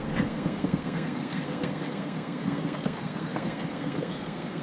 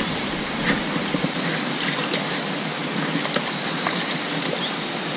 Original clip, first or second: second